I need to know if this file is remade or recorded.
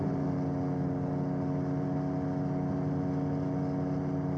recorded